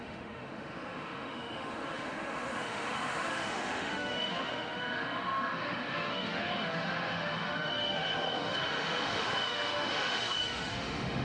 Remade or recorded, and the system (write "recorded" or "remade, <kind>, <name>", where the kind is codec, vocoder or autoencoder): remade, autoencoder, DAC-VAE